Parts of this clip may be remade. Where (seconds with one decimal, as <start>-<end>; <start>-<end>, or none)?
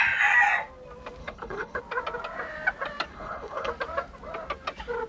1.2-1.8; 3.1-3.7